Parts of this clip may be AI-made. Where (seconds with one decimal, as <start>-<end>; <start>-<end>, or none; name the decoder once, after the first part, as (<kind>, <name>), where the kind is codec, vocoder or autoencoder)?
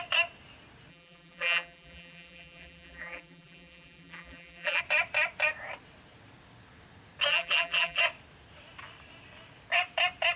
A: 0.9-4.8 (vocoder, BigVGAN v2); 7.3-8.0